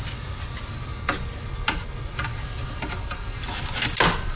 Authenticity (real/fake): fake